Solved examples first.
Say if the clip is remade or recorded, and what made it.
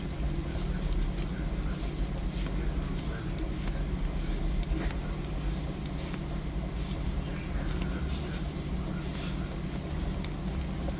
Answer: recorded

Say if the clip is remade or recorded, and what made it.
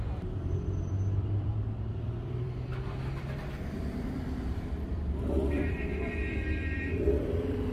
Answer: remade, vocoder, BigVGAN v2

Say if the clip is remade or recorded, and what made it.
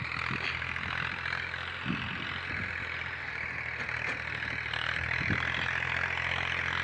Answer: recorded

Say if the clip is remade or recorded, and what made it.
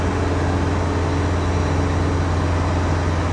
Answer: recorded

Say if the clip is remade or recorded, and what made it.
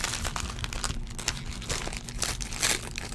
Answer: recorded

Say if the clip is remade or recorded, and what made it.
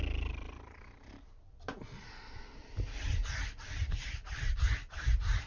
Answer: remade, vocoder, BigVGAN v2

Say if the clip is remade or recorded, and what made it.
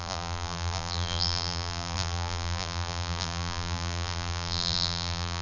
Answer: remade, vocoder, BigVGAN v2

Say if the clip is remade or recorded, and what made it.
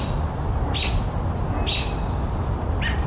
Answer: recorded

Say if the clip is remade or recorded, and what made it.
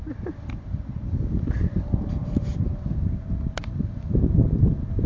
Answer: remade, vocoder, BigVGAN v2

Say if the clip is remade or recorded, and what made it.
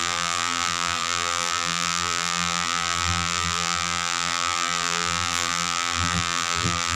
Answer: remade, vocoder, BigVGAN v2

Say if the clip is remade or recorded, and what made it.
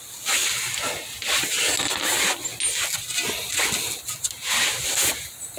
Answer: recorded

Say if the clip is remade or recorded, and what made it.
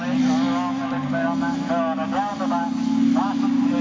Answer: recorded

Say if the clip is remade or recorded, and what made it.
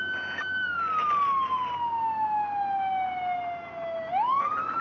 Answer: recorded